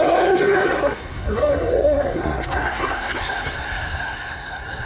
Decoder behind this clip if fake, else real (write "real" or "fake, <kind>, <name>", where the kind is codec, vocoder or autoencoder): fake, codec, SNAC